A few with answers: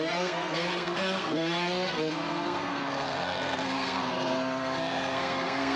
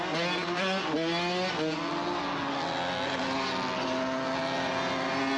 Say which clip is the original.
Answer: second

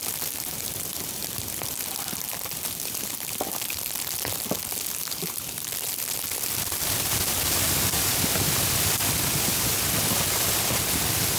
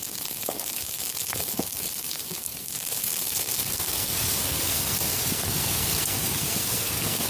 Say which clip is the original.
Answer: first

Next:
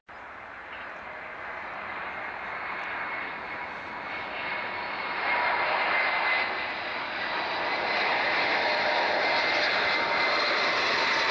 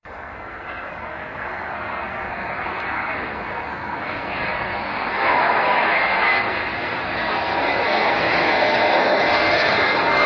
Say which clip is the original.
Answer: first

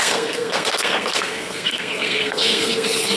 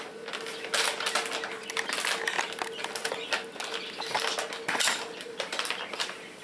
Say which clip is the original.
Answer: second